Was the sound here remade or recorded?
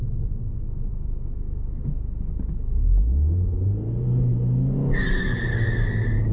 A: recorded